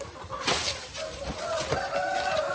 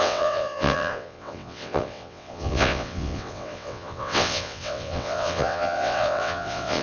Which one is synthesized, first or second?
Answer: second